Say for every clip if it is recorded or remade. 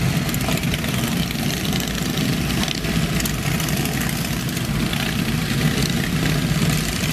recorded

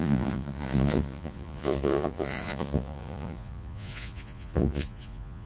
remade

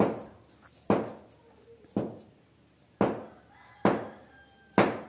recorded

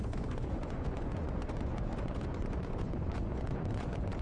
remade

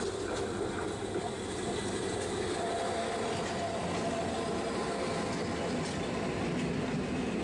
recorded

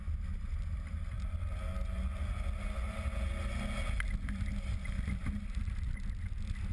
recorded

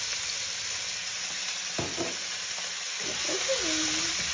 recorded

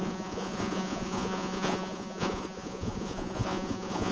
remade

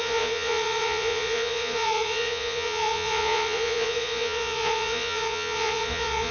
remade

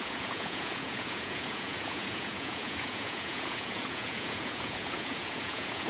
remade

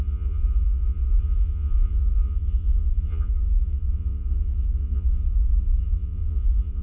remade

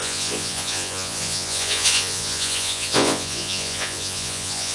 remade